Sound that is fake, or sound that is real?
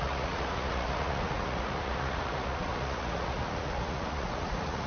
fake